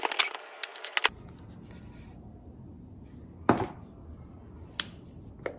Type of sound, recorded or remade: recorded